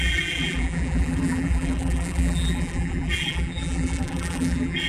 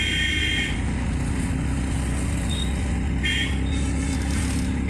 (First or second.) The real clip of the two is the second